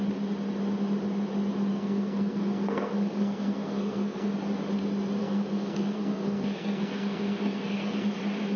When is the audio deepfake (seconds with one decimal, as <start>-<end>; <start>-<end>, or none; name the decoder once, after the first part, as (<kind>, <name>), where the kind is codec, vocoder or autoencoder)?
1.7-4.3 (codec, SNAC); 5.2-8.2